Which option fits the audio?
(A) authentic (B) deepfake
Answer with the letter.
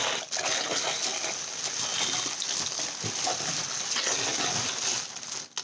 A